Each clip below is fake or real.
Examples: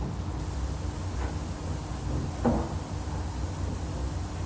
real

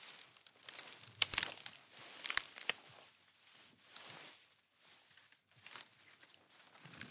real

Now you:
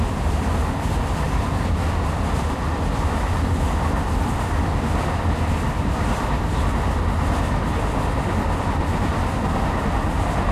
real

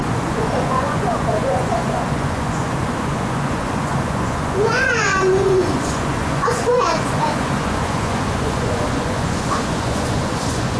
fake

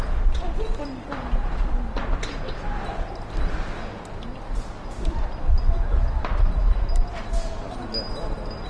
real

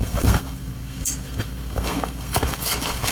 fake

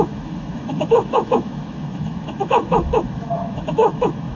fake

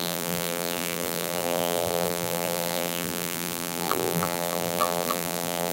fake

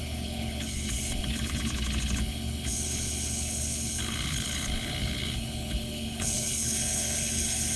fake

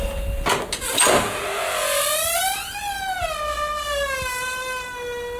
real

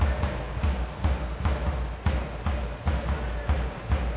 real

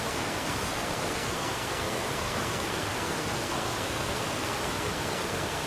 fake